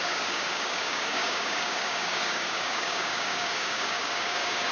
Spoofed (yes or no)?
yes